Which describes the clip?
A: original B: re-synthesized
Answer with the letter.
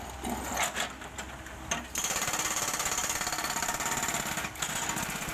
A